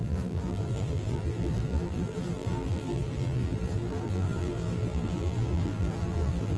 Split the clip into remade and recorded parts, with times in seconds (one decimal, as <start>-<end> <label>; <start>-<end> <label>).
0.0-6.6 remade